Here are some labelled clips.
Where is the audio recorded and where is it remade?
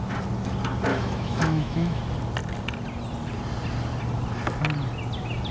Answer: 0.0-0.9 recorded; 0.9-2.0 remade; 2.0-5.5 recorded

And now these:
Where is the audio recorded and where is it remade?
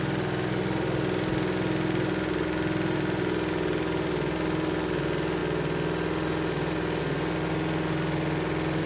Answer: 0.0-8.9 recorded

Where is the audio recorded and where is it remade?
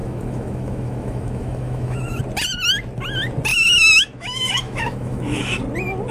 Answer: 0.0-2.2 remade; 2.2-3.5 recorded; 3.5-5.6 remade; 5.6-6.1 recorded